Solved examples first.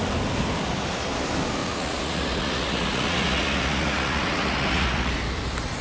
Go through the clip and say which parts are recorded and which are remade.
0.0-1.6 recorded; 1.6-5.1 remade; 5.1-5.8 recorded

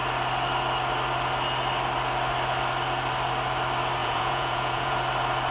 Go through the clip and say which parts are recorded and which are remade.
0.0-4.0 recorded; 4.0-5.0 remade; 5.0-5.5 recorded

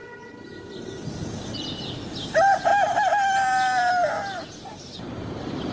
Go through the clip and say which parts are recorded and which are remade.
0.0-2.7 remade; 2.7-4.1 recorded; 4.1-5.7 remade